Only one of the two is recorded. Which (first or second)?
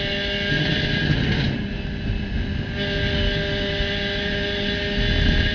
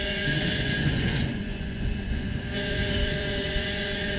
first